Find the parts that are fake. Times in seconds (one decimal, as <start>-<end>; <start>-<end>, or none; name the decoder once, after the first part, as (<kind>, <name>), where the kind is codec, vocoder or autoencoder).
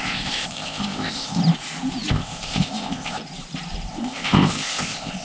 0.0-1.4 (codec, ZipCodec); 2.1-3.2; 3.9-5.2